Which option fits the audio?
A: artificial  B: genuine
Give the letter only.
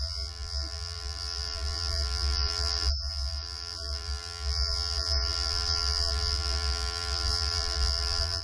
A